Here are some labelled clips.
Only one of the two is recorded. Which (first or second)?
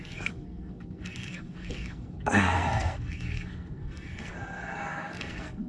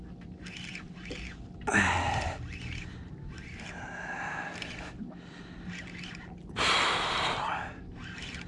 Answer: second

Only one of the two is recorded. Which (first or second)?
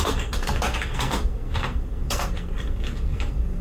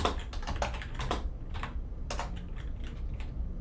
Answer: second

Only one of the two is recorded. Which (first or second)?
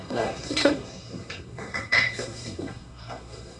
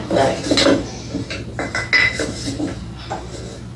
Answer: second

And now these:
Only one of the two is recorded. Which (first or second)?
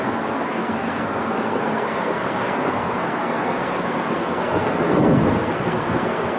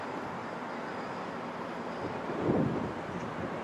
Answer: second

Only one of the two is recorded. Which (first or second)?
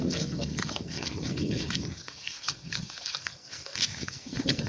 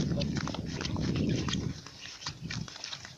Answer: second